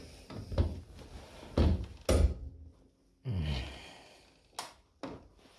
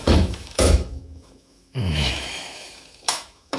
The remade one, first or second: second